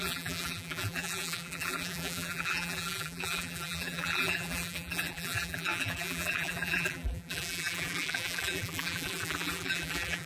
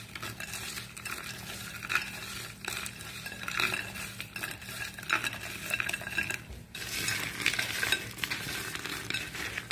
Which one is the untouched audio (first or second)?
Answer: second